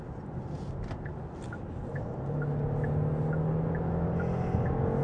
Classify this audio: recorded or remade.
recorded